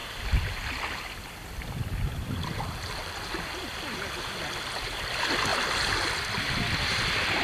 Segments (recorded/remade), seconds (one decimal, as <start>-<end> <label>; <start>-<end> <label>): 0.0-7.4 recorded